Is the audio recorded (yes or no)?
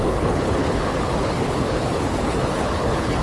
no